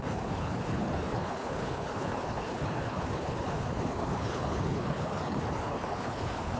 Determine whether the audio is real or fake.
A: fake